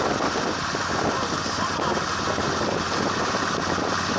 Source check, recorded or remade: recorded